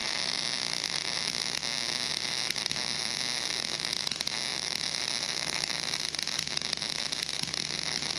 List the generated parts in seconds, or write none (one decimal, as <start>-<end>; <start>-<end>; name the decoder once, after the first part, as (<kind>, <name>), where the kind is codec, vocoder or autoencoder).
2.1-3.6 (vocoder, BigVGAN v2); 4.5-6.0